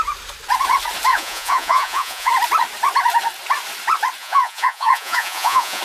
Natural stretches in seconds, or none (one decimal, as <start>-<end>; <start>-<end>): 0.0-1.1; 2.3-4.2